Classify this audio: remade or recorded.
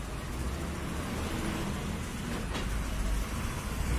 recorded